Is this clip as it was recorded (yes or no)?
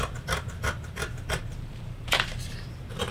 no